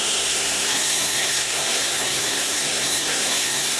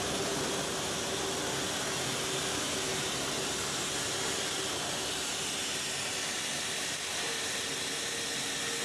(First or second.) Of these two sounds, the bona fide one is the second